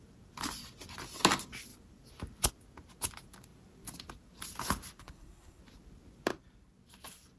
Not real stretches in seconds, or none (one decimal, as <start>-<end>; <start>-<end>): 5.0-5.6